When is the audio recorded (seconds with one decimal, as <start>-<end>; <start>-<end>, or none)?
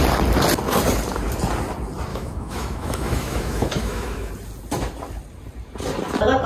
0.0-2.1; 4.3-6.5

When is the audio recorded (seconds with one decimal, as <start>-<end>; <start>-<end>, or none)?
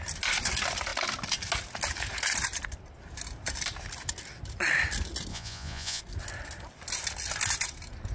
0.0-5.3; 6.0-8.1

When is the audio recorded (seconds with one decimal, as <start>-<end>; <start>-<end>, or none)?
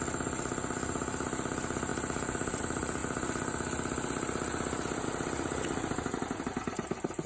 3.0-6.4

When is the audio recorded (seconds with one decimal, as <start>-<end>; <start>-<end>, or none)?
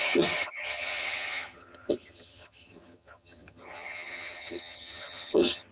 none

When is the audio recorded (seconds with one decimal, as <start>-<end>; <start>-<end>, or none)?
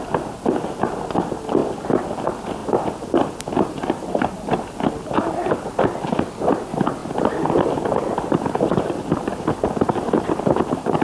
0.0-2.6; 4.3-7.0; 10.5-11.0